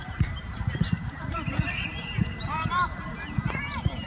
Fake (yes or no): yes